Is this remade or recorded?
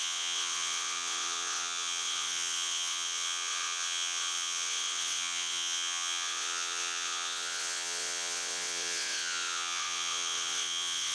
remade